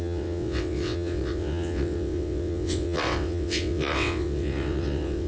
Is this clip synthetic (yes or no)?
yes